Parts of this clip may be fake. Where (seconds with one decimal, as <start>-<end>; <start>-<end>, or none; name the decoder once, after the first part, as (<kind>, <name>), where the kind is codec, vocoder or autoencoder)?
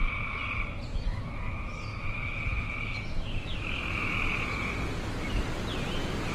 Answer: 0.9-4.1 (autoencoder, DAC-VAE)